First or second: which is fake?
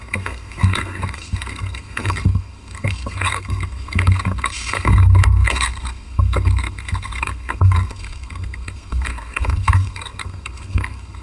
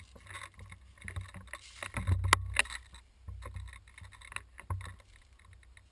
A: first